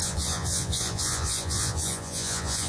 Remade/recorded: remade